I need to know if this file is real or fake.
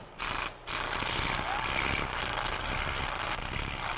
real